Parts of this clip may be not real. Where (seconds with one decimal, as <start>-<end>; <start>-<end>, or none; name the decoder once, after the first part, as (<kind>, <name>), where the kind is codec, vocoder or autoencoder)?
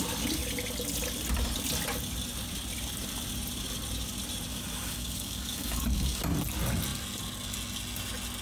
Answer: 4.5-6.2 (codec, DAC)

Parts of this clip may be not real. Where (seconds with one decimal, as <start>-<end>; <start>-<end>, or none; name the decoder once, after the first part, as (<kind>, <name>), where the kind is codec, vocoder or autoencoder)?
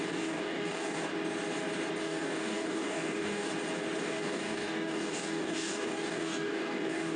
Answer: 0.0-1.1 (codec, DAC); 2.0-3.5; 4.0-7.2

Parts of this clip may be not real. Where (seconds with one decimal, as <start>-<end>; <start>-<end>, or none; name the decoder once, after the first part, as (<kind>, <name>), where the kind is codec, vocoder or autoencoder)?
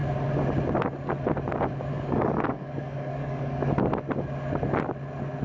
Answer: 1.9-3.7 (codec, DAC)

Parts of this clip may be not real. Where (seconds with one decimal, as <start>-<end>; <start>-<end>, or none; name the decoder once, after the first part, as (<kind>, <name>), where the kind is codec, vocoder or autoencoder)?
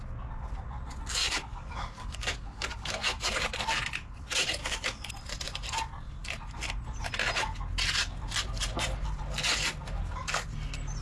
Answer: 1.2-3.4 (codec, DAC); 4.6-5.1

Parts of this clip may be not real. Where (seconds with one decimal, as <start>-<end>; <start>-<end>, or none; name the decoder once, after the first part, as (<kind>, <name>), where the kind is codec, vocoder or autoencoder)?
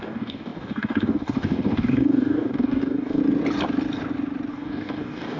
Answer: 0.0-3.2 (codec, DAC); 4.5-5.4